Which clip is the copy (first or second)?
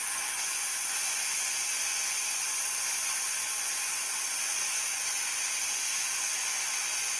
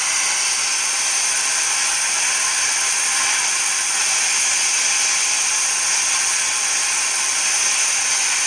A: first